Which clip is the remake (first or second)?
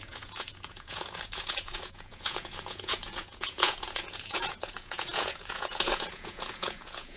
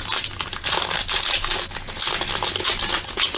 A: first